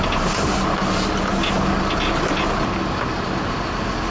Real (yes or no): yes